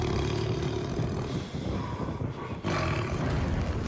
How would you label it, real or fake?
real